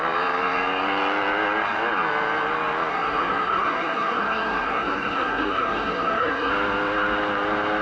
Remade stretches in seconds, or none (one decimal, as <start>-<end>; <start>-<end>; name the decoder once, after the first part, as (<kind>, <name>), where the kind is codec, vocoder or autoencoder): 2.9-6.5 (codec, SNAC)